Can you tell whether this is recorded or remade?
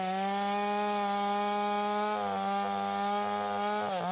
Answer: recorded